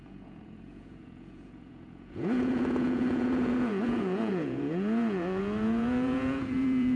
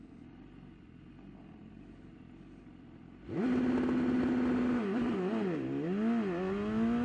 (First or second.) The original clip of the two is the second